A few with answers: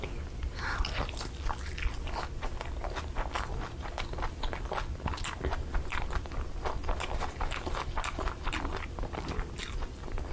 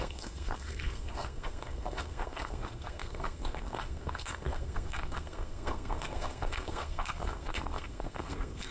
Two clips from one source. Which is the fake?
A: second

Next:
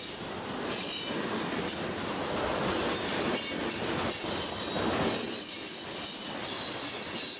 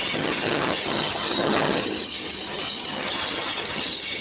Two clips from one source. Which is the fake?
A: second